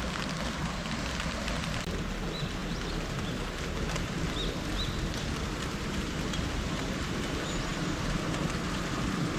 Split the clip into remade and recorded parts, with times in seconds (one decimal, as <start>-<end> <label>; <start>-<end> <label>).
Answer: 0.0-0.6 recorded; 0.6-1.5 remade; 1.5-9.4 recorded